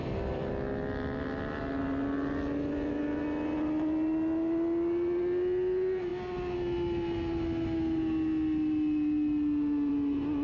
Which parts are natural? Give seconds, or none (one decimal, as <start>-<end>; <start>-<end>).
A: 0.5-10.4